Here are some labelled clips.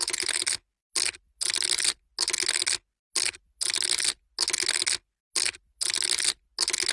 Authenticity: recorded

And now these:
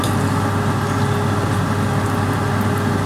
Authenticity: recorded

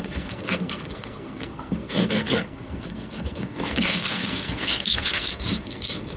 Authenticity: remade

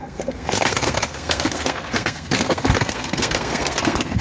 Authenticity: remade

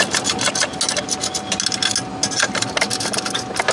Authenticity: recorded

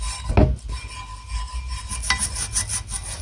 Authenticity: recorded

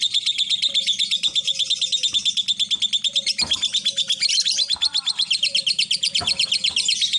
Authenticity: recorded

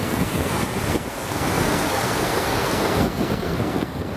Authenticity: remade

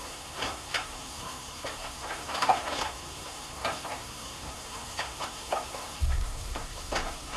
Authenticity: remade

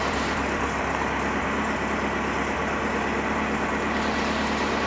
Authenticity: recorded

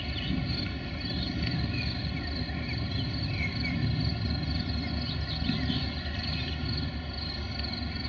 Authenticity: recorded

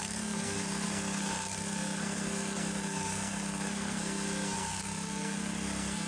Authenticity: remade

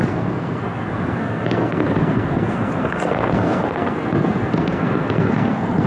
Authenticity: remade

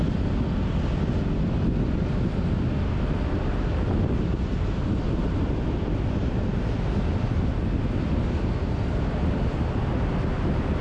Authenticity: recorded